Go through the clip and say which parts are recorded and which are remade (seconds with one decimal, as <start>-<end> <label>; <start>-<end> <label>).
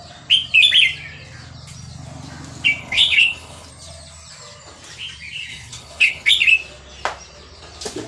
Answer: 0.0-2.8 recorded; 2.8-3.7 remade; 3.7-5.5 recorded; 5.5-6.3 remade; 6.3-8.1 recorded